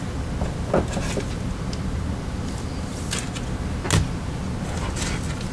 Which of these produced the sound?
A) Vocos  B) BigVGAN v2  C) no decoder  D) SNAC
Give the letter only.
C